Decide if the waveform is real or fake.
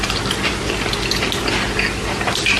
real